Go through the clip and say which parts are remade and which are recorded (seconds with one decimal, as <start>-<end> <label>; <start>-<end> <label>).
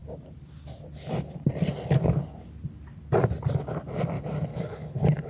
0.0-4.5 recorded; 4.5-5.3 remade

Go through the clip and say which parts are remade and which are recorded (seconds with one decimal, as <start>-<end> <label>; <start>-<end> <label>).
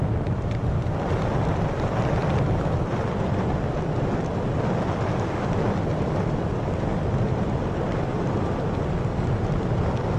0.0-4.3 remade; 4.3-5.0 recorded; 5.0-10.2 remade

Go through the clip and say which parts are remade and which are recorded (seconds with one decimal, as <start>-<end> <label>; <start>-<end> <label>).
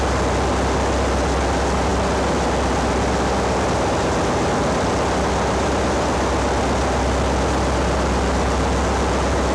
0.0-9.5 recorded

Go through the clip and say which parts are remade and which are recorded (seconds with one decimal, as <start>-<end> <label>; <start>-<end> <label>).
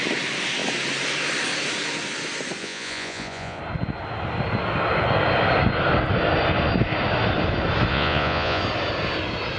0.0-2.6 recorded; 2.6-3.6 remade; 3.6-7.9 recorded; 7.9-8.6 remade; 8.6-9.6 recorded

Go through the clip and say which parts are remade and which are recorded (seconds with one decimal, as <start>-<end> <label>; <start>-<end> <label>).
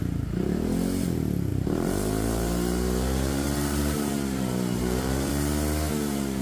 0.0-1.5 recorded; 1.5-5.3 remade; 5.3-6.4 recorded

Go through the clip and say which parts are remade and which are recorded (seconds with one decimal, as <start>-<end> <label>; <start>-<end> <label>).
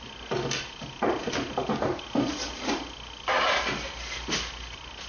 0.0-5.1 recorded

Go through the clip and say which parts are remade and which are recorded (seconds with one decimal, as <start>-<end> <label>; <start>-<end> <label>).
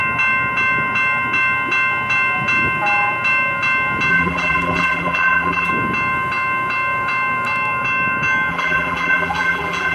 0.0-4.1 recorded; 4.1-5.7 remade; 5.7-8.5 recorded; 8.5-9.9 remade